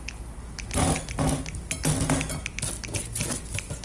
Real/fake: real